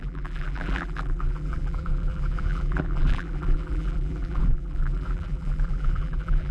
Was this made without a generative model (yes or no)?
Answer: no